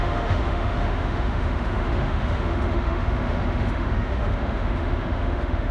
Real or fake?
fake